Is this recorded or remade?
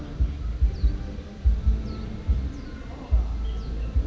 recorded